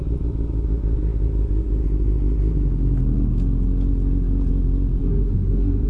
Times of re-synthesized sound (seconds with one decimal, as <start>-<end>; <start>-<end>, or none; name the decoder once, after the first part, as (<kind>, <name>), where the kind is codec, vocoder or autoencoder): 5.0-5.9 (codec, SNAC)